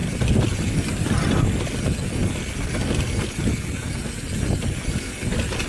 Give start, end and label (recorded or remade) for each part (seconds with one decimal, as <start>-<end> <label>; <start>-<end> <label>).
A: 0.0-5.7 recorded